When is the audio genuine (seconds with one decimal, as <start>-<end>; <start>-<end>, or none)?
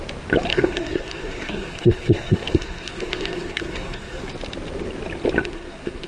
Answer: 0.0-0.5; 4.2-5.4